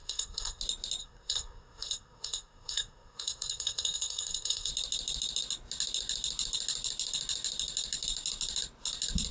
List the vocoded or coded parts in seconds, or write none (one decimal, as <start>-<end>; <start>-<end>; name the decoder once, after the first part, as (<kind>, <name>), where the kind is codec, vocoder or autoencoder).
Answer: 0.0-0.6 (codec, SNAC); 1.0-4.7